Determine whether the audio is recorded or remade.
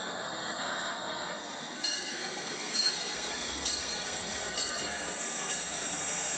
remade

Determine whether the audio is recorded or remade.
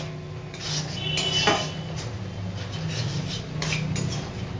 recorded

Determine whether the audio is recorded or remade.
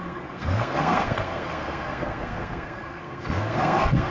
remade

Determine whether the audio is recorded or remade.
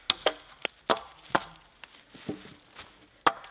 recorded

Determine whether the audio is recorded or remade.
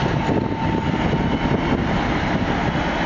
recorded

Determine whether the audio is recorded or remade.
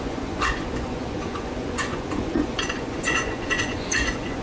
remade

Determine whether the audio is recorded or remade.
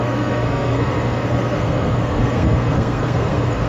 remade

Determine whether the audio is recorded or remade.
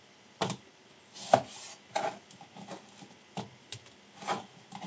recorded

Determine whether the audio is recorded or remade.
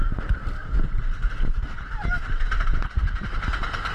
recorded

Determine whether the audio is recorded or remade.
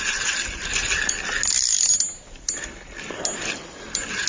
recorded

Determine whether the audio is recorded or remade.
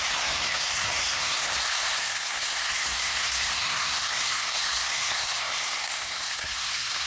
remade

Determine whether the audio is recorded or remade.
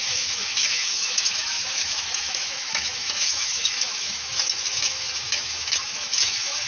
remade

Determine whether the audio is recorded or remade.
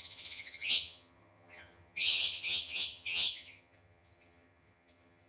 remade